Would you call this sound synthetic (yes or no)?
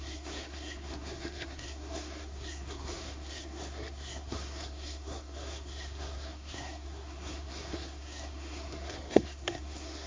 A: yes